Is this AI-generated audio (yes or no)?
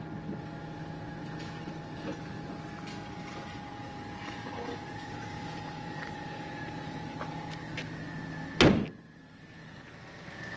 no